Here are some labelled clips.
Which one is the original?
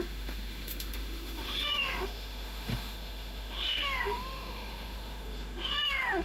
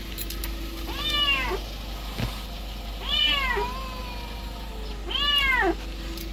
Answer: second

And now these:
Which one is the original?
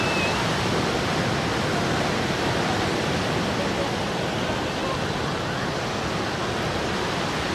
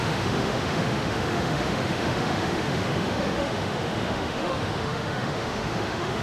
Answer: first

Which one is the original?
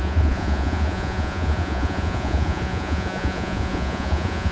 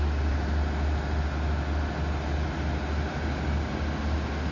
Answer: second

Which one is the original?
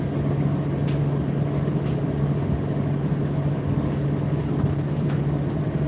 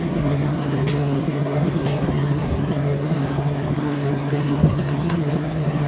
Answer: first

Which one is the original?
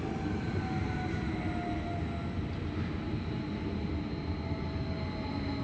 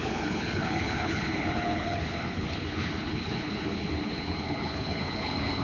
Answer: first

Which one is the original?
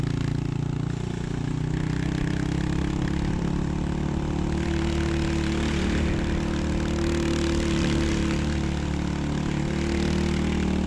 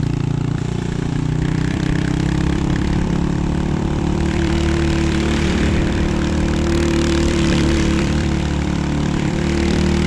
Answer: first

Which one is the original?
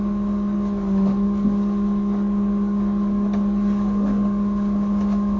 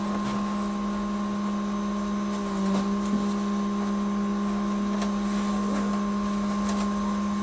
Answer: second